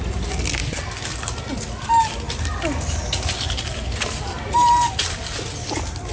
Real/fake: real